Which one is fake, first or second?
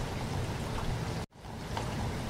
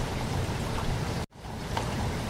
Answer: second